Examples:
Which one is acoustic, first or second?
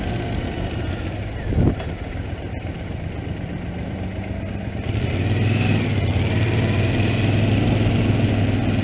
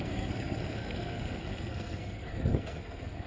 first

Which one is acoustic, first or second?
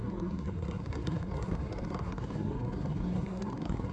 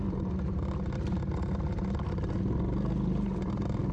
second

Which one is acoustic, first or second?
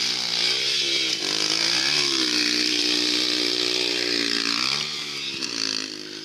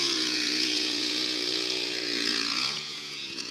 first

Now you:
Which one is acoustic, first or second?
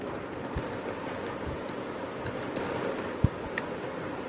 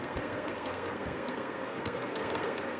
first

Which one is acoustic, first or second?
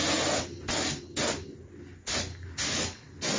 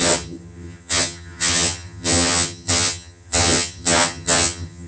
first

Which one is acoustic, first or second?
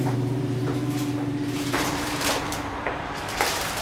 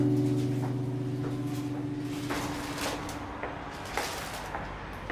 second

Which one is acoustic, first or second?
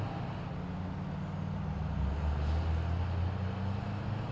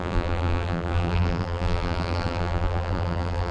first